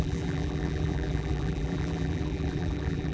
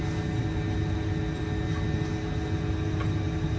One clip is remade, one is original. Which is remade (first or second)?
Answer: first